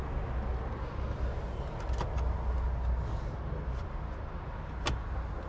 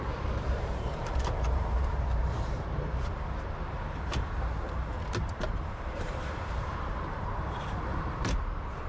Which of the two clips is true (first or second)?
first